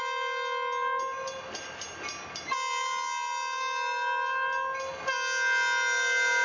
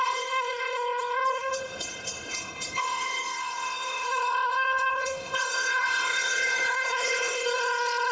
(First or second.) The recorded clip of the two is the first